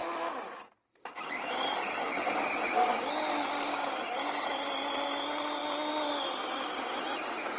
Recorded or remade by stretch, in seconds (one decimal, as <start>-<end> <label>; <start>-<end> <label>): 0.0-7.6 recorded